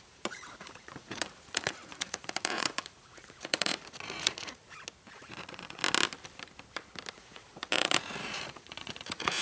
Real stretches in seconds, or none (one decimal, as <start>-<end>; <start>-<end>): 4.6-5.1; 5.8-7.1